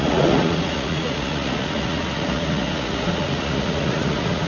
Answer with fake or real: fake